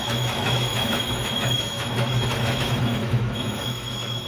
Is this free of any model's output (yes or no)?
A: no